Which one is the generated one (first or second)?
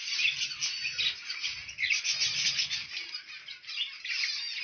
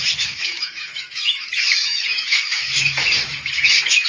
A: second